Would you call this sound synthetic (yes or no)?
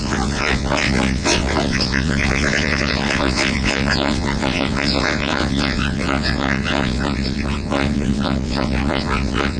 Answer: yes